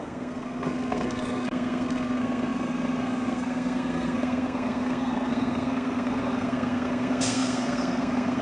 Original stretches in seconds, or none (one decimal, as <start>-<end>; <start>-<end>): none